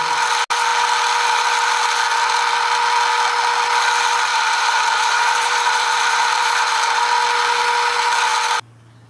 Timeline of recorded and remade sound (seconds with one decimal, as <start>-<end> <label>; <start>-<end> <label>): 0.0-4.3 recorded; 4.3-7.0 remade; 7.0-9.1 recorded